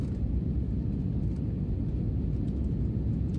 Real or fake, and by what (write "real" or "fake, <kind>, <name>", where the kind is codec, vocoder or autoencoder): real